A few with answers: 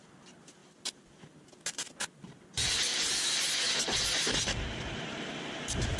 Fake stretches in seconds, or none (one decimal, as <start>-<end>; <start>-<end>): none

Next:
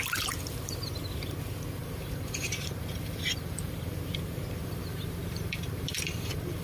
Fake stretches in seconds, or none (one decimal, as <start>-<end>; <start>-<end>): 1.8-3.7; 4.6-6.6

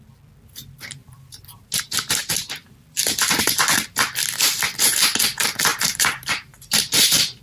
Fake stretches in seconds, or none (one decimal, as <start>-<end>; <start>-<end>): 1.0-1.8; 5.7-7.4

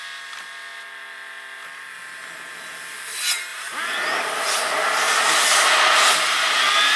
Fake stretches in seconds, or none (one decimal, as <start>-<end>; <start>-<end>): 3.5-5.4

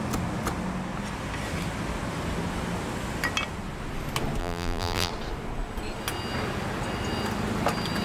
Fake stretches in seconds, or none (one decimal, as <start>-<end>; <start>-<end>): 4.4-5.1

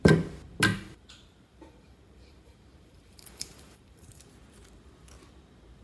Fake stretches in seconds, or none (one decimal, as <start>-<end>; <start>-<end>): 0.7-4.2